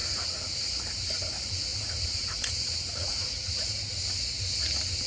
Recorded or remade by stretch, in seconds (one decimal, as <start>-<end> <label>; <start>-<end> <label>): 0.0-0.6 remade; 0.6-1.7 recorded; 1.7-3.7 remade; 3.7-5.1 recorded